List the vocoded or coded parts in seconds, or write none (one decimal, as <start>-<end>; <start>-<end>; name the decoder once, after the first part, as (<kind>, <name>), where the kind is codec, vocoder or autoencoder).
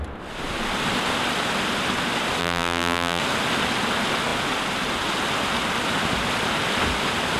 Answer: 2.4-3.2 (vocoder, BigVGAN v2)